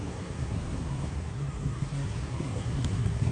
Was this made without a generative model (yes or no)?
no